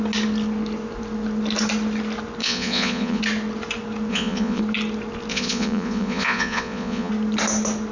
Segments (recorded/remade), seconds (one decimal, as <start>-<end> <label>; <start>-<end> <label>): 0.0-2.4 recorded; 2.4-3.2 remade; 3.2-4.1 recorded; 4.1-4.6 remade; 4.6-5.3 recorded; 5.3-7.1 remade; 7.1-7.9 recorded

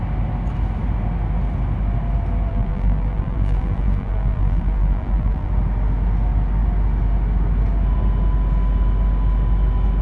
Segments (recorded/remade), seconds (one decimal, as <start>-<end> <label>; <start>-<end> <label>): 0.0-2.5 recorded; 2.5-5.5 remade; 5.5-10.0 recorded

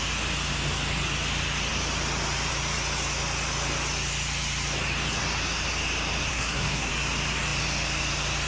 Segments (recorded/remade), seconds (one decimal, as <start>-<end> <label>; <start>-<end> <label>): 0.0-6.3 recorded; 6.3-6.9 remade; 6.9-8.5 recorded

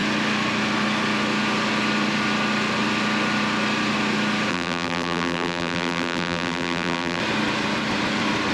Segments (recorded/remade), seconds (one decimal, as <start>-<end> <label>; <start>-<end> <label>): 0.0-4.5 recorded; 4.5-7.2 remade; 7.2-8.5 recorded

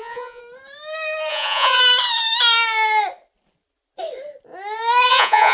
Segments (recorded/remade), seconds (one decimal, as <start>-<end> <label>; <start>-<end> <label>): 0.0-0.4 remade; 0.4-1.3 recorded; 1.3-1.8 remade; 1.8-5.1 recorded; 5.1-5.5 remade

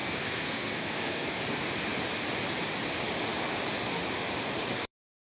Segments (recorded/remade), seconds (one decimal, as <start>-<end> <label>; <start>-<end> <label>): 0.0-1.4 remade; 1.4-5.3 recorded

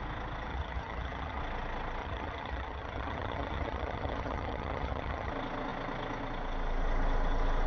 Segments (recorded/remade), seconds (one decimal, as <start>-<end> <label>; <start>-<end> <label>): 0.0-0.5 recorded; 0.5-1.4 remade; 1.4-2.0 recorded; 2.0-5.3 remade; 5.3-7.7 recorded